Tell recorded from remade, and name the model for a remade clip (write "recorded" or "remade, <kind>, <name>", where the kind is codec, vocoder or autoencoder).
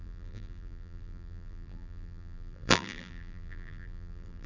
remade, vocoder, BigVGAN v2